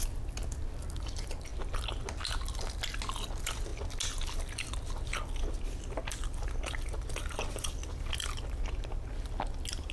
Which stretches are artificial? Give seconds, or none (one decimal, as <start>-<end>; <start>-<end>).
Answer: none